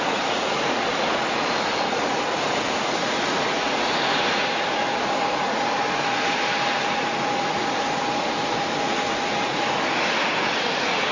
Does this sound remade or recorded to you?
remade